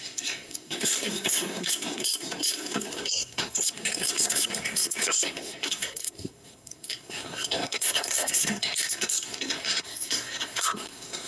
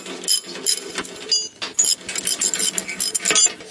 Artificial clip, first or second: first